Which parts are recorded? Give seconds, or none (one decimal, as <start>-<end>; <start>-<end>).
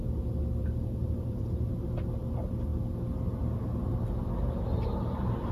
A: 0.0-0.6; 2.2-5.5